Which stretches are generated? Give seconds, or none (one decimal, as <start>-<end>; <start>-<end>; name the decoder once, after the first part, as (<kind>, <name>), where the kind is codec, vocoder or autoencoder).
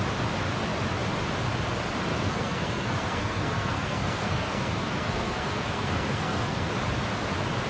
2.1-6.7 (codec, SNAC)